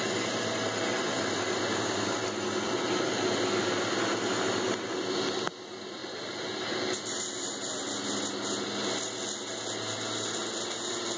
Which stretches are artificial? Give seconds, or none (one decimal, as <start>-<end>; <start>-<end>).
none